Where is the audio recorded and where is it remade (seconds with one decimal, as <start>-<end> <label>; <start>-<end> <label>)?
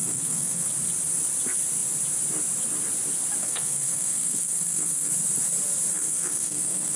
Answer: 0.0-0.7 remade; 0.7-3.4 recorded; 3.4-5.1 remade; 5.1-5.9 recorded; 5.9-7.0 remade